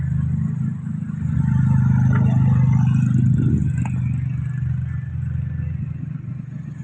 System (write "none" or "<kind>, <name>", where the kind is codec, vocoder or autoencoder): none